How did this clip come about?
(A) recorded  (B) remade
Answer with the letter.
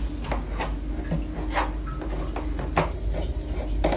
A